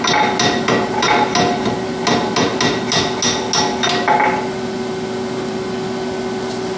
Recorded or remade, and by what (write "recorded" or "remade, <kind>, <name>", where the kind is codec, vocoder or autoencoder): recorded